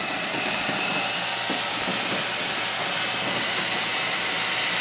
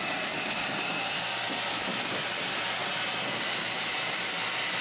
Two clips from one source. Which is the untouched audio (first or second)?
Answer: first